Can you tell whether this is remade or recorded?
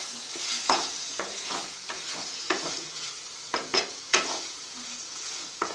remade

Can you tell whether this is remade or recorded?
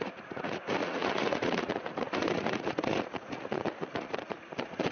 remade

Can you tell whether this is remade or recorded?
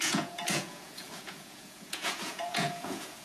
remade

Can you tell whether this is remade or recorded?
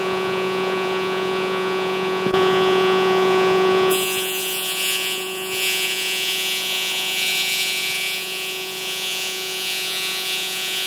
remade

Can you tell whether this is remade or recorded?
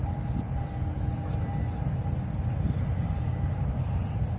recorded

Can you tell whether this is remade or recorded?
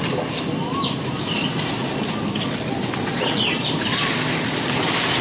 recorded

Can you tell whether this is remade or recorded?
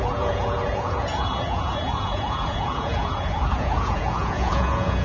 remade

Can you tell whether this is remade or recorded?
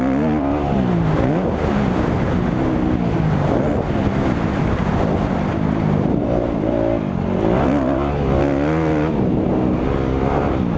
recorded